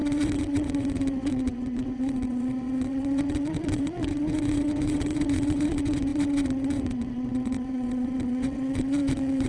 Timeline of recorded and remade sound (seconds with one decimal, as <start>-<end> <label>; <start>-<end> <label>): 0.0-9.5 remade